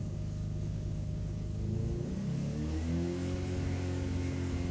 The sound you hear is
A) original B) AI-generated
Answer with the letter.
B